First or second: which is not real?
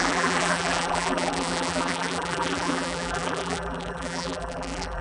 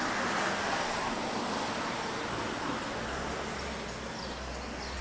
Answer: first